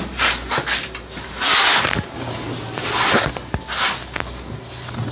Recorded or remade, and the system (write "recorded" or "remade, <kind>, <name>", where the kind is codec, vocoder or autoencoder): recorded